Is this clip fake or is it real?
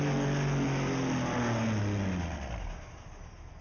real